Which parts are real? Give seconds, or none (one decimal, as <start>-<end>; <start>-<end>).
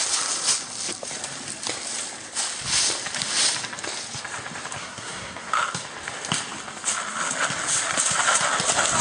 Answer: 0.0-4.8; 5.5-9.0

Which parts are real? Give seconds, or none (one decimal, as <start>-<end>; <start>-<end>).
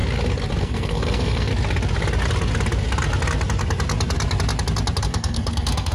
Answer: 0.0-0.6; 1.5-5.0